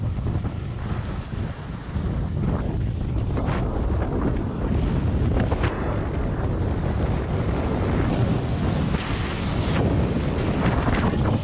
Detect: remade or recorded recorded